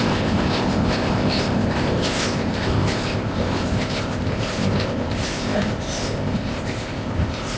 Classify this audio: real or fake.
fake